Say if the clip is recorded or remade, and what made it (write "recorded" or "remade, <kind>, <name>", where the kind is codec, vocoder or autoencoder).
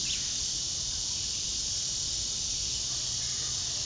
recorded